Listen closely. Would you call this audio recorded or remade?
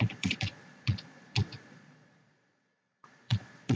remade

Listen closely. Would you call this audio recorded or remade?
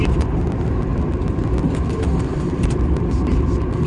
recorded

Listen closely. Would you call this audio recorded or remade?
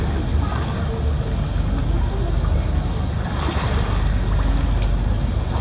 recorded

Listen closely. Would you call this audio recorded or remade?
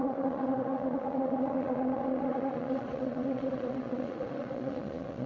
remade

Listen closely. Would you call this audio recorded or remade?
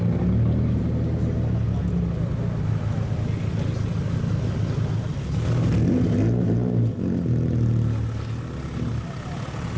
recorded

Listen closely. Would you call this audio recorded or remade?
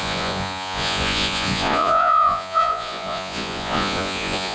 remade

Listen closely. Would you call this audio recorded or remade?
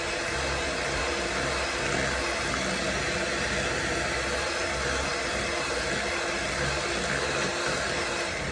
recorded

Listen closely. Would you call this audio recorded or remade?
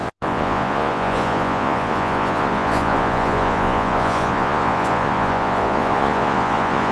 remade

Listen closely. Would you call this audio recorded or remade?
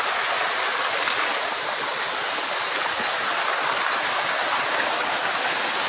recorded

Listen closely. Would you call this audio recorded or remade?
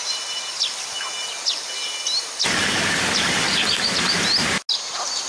recorded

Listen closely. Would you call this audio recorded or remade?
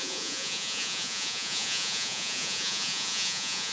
remade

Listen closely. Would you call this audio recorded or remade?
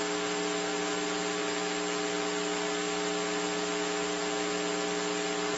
recorded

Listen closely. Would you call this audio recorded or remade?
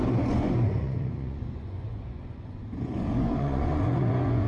remade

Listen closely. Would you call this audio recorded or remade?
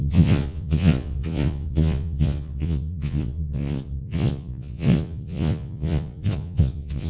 remade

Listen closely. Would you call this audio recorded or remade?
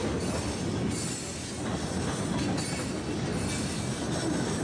recorded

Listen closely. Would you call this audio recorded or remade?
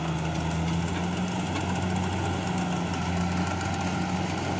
recorded